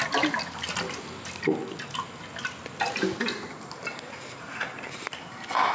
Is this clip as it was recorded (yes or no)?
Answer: yes